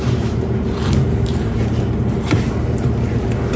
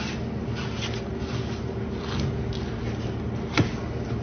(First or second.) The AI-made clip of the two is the first